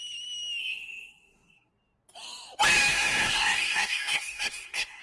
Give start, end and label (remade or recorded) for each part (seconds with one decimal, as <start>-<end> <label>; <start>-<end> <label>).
0.0-0.6 recorded; 0.6-1.7 remade; 1.7-2.9 recorded; 2.9-5.0 remade